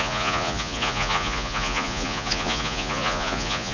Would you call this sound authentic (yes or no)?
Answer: no